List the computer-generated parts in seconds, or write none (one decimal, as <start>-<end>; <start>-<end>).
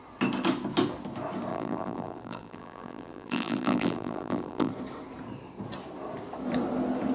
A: 1.5-4.7